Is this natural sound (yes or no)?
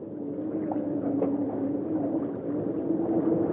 yes